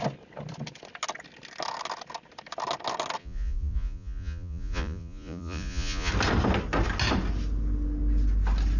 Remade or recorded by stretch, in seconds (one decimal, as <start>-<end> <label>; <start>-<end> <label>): 0.0-3.2 recorded; 3.2-6.1 remade; 6.1-8.8 recorded